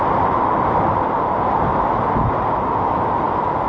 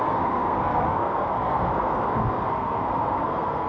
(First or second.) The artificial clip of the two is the second